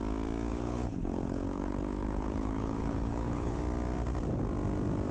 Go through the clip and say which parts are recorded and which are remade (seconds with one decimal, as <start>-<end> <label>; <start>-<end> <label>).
0.0-0.5 recorded; 0.5-3.6 remade; 3.6-5.1 recorded